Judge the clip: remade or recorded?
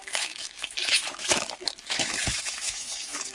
remade